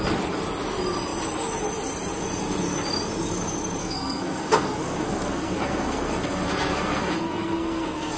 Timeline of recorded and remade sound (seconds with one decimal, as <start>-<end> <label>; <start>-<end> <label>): 0.0-3.8 recorded; 3.8-8.2 remade